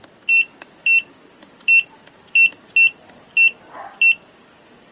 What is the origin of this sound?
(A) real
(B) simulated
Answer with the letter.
A